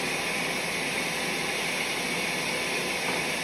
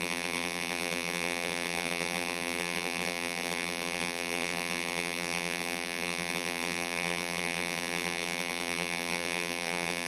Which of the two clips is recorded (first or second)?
first